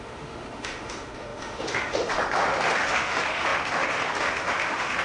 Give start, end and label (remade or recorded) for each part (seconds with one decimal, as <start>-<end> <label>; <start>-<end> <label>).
0.0-5.0 remade